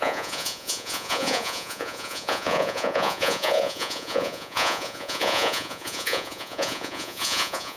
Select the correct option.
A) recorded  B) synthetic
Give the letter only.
B